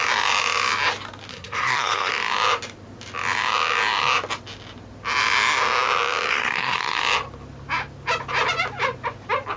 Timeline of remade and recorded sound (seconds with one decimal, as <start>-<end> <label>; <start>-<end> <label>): 0.0-1.3 recorded; 1.3-2.1 remade; 2.1-6.3 recorded; 6.3-7.0 remade; 7.0-9.6 recorded